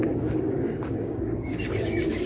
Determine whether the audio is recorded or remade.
remade